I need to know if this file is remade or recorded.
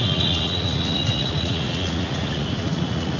remade